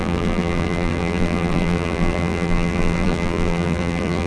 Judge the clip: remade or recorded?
remade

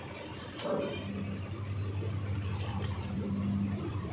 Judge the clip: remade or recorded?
remade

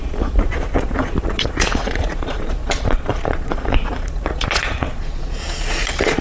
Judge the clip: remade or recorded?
remade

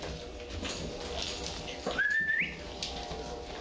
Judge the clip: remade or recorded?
recorded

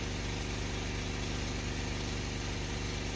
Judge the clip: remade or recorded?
recorded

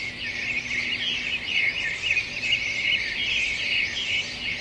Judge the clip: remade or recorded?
recorded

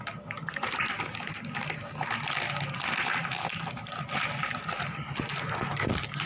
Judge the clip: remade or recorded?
recorded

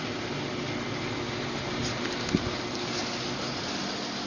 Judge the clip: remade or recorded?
recorded